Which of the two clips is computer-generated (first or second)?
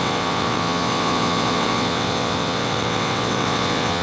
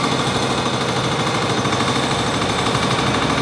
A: first